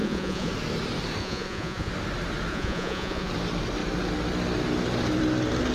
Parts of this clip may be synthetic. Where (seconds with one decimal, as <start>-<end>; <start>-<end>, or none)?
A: 0.0-0.5; 1.2-1.9; 2.5-3.3

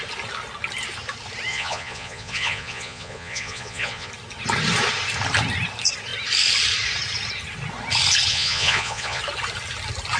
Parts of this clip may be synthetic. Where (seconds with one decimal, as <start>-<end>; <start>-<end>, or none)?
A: 1.5-4.1; 8.3-9.2

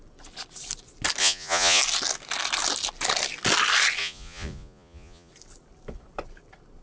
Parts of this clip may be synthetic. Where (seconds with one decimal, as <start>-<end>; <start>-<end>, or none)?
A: 1.2-1.8; 4.0-5.3

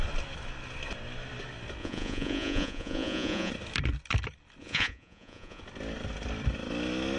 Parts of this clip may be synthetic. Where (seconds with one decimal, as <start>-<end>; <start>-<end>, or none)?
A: 1.8-3.5; 4.6-5.6